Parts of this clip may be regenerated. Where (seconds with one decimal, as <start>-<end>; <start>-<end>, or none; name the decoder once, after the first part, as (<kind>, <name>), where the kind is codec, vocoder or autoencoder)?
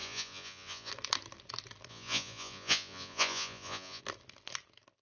0.0-0.9 (vocoder, Vocos); 1.9-4.0